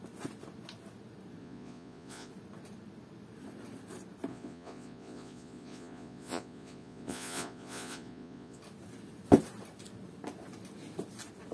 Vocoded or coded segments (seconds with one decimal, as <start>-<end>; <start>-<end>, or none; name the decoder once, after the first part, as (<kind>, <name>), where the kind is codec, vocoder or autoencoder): 1.4-2.3 (vocoder, Vocos); 4.3-8.6